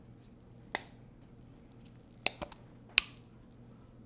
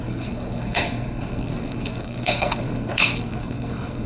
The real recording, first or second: first